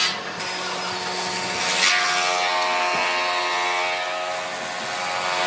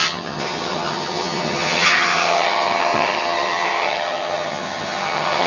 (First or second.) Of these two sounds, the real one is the first